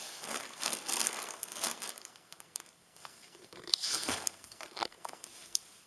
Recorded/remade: remade